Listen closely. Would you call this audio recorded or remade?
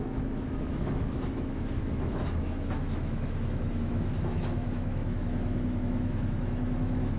remade